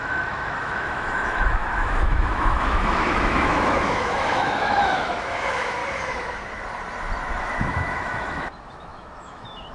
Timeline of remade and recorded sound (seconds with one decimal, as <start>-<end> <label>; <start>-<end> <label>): 0.0-5.8 remade; 5.8-7.4 recorded; 7.4-9.7 remade